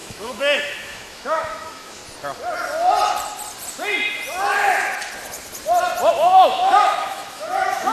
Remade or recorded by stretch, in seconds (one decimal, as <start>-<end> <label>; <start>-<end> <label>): 0.0-2.0 remade; 2.0-6.1 recorded; 6.1-7.9 remade